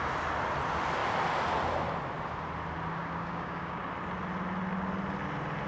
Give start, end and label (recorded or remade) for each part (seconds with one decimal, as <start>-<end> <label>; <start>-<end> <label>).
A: 0.0-3.0 recorded; 3.0-3.8 remade; 3.8-5.7 recorded